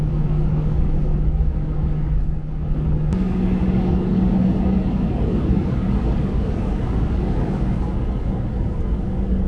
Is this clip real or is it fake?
fake